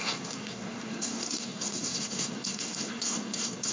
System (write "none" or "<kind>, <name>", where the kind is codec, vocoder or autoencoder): codec, SNAC